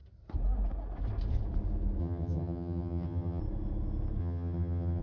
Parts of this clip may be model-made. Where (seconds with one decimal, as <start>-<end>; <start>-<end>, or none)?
2.0-3.4; 4.2-5.0